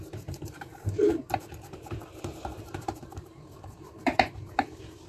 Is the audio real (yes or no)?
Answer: no